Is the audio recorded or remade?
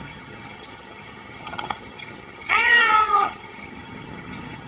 remade